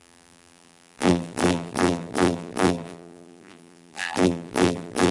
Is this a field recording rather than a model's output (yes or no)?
no